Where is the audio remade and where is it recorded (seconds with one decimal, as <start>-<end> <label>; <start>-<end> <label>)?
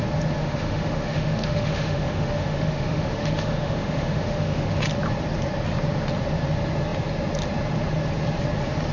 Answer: 0.0-0.4 recorded; 0.4-4.7 remade; 4.7-8.9 recorded